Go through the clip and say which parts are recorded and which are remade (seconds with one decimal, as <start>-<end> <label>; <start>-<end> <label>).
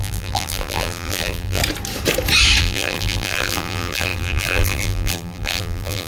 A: 0.0-1.6 remade; 1.6-2.6 recorded; 2.6-6.1 remade